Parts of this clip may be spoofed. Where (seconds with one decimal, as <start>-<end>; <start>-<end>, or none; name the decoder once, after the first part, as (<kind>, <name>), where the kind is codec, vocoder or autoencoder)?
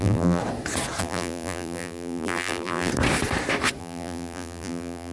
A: 0.0-0.4 (vocoder, BigVGAN v2); 1.0-2.9; 3.8-5.1